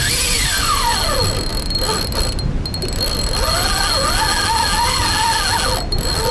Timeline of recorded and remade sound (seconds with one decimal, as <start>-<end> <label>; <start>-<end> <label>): 0.0-6.3 recorded